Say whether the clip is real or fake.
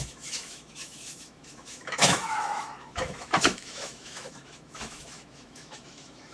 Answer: fake